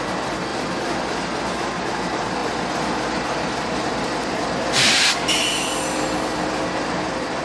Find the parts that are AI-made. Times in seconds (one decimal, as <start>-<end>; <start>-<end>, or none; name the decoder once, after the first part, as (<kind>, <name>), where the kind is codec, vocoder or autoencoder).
0.5-1.4 (vocoder, BigVGAN v2); 2.4-5.1